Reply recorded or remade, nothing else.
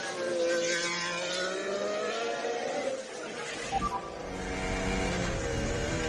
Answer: recorded